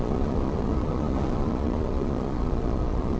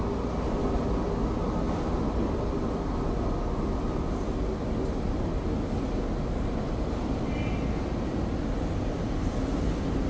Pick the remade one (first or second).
first